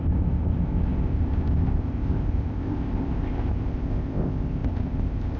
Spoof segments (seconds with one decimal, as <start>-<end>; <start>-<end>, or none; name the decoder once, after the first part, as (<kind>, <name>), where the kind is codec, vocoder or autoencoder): 0.0-5.4 (codec, ZipCodec)